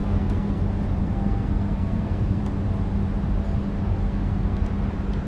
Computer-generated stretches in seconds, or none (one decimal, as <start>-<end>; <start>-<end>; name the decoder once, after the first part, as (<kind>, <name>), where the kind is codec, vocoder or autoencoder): 0.0-0.6 (codec, SNAC); 1.0-2.4; 3.9-4.7

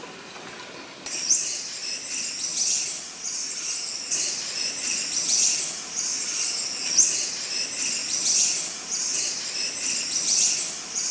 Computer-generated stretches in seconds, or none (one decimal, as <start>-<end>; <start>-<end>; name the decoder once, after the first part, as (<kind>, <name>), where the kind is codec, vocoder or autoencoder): 2.5-6.0 (vocoder, Vocos); 8.0-8.9

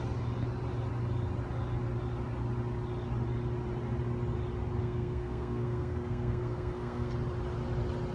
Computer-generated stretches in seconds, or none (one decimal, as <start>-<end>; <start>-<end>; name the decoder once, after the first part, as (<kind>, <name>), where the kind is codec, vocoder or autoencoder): 4.8-7.1 (codec, SNAC)

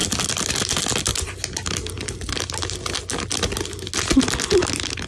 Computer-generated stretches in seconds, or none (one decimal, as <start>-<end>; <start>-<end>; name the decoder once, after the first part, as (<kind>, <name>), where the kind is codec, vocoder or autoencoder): none

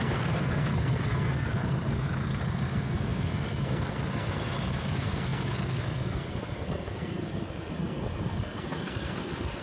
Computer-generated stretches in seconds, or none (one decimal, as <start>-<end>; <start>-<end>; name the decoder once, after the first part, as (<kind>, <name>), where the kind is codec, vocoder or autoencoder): 0.0-9.6 (codec, SNAC)